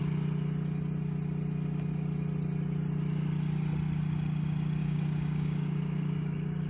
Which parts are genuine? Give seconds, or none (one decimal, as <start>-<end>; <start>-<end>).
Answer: 0.0-4.8